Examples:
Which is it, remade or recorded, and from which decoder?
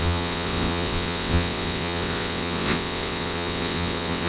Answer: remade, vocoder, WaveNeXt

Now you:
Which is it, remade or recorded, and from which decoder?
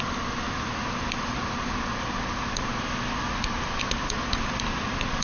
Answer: recorded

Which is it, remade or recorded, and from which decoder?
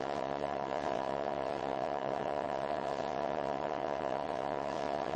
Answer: remade, vocoder, WaveNeXt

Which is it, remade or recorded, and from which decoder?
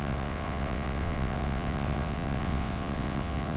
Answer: remade, vocoder, WaveNeXt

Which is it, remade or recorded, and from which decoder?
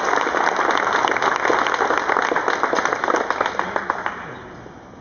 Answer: recorded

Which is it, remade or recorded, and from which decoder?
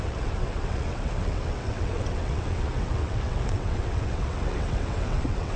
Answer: remade, vocoder, WaveNeXt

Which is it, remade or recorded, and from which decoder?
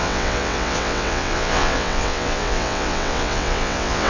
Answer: remade, vocoder, WaveNeXt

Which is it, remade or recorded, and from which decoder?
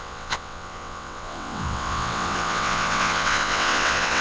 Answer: remade, vocoder, WaveNeXt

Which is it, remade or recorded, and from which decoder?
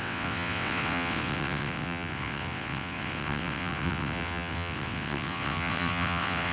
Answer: remade, vocoder, WaveNeXt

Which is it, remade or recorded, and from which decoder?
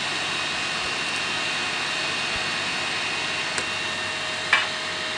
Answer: recorded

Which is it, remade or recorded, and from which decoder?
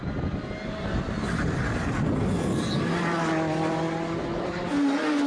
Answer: recorded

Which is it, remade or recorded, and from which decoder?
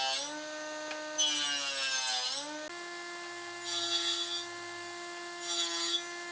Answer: recorded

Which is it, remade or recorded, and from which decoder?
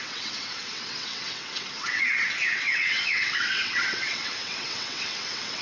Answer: remade, vocoder, WaveNeXt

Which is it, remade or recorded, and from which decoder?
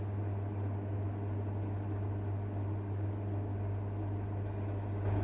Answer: recorded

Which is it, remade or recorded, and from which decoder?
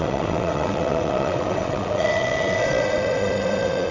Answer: remade, vocoder, WaveNeXt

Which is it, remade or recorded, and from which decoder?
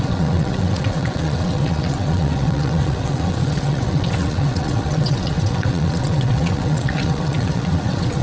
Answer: remade, vocoder, WaveNeXt